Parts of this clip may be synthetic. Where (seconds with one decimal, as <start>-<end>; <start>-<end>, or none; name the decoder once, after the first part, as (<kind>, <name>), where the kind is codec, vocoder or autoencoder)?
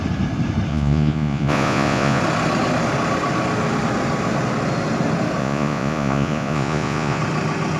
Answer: 0.7-2.2 (vocoder, Vocos); 5.4-7.2